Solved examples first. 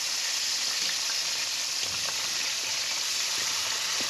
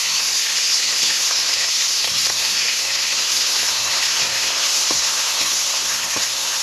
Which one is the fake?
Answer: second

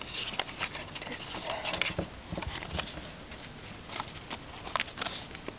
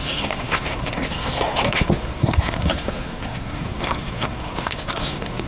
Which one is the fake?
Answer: second